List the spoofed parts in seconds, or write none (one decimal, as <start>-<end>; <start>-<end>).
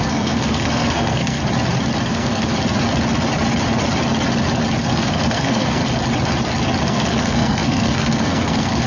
0.0-1.4; 2.1-2.5; 4.8-5.8; 6.8-8.9